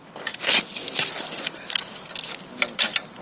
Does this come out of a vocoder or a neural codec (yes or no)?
no